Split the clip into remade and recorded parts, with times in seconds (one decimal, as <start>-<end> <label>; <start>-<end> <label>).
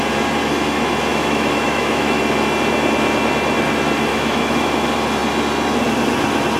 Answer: 0.0-1.1 recorded; 1.1-2.2 remade; 2.2-4.1 recorded; 4.1-4.7 remade; 4.7-6.6 recorded